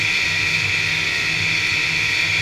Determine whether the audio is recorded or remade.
recorded